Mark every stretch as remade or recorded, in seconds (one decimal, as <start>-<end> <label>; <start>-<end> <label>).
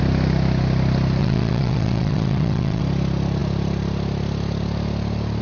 0.0-1.2 recorded; 1.2-2.8 remade; 2.8-5.4 recorded